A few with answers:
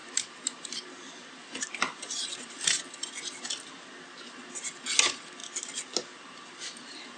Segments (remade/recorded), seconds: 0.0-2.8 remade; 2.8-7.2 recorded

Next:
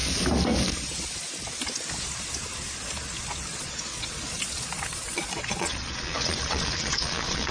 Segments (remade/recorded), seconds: 0.0-3.6 recorded; 3.6-7.5 remade

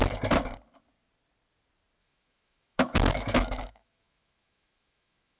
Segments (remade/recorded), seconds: 0.0-2.0 recorded; 2.0-5.4 remade